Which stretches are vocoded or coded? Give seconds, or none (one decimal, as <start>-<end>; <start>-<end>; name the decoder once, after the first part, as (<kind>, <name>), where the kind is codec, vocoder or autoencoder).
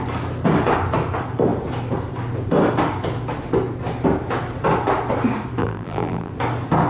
5.6-6.3 (vocoder, BigVGAN v2)